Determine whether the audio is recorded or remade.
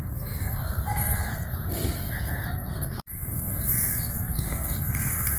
remade